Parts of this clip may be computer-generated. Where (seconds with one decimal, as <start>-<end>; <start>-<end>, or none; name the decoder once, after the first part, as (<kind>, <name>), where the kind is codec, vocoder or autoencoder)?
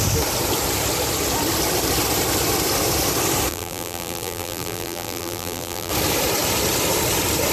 3.5-5.9 (vocoder, BigVGAN v2)